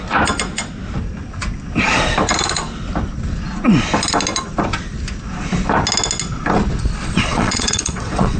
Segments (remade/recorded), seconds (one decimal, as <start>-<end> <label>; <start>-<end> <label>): 0.0-6.8 recorded; 6.8-8.4 remade

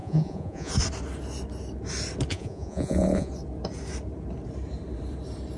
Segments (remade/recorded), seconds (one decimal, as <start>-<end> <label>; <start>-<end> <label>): 0.0-0.7 remade; 0.7-2.3 recorded; 2.3-3.3 remade; 3.3-5.6 recorded

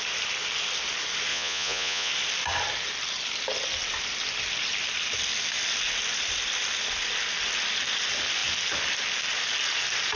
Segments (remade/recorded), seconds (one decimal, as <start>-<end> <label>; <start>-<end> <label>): 0.0-1.3 recorded; 1.3-2.1 remade; 2.1-10.2 recorded

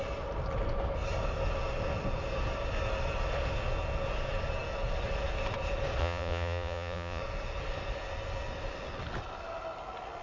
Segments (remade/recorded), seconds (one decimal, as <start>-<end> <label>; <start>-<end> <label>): 0.0-6.0 recorded; 6.0-7.2 remade; 7.2-10.2 recorded

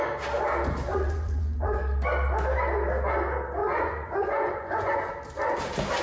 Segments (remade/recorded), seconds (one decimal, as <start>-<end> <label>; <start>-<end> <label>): 0.0-0.9 recorded; 0.9-1.8 remade; 1.8-3.6 recorded; 3.6-5.1 remade; 5.1-6.0 recorded

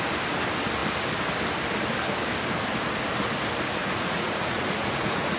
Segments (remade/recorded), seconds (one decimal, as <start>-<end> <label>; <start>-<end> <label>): 0.0-3.8 recorded; 3.8-5.4 remade